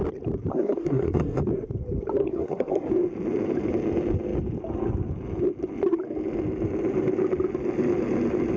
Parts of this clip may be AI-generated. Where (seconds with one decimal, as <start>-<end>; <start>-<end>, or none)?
0.5-1.4; 2.2-2.9